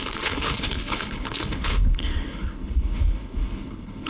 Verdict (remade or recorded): remade